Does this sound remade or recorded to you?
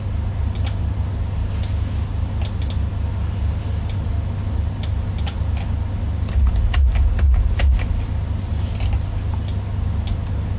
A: recorded